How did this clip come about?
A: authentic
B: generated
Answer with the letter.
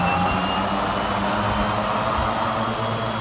A